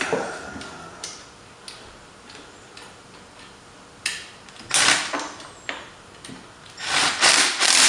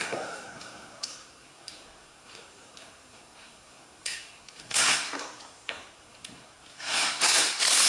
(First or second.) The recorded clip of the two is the first